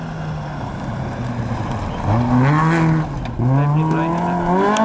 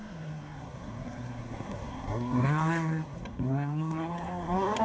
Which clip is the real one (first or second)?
first